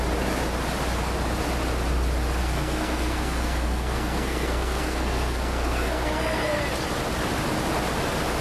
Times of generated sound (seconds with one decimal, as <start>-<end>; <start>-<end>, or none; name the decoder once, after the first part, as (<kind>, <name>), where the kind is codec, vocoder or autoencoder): 2.4-6.6 (codec, SNAC)